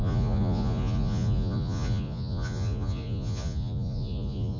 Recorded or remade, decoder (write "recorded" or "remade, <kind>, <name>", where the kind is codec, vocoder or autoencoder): remade, vocoder, Vocos